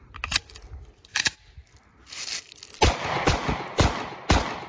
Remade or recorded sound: recorded